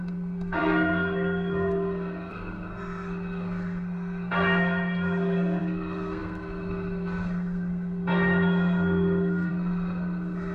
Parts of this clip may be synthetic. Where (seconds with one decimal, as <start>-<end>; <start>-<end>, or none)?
0.0-10.5